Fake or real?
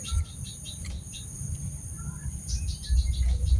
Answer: real